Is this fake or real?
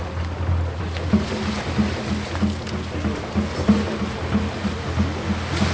real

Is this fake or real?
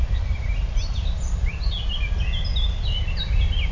real